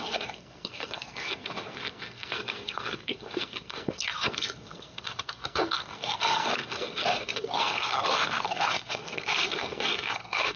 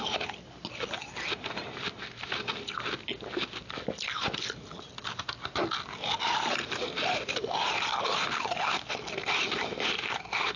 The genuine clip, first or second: second